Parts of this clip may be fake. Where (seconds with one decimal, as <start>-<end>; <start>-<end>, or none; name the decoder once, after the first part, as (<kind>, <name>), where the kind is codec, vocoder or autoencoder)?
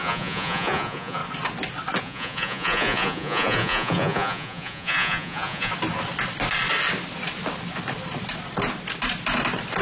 0.0-1.2 (vocoder, Vocos); 2.0-5.7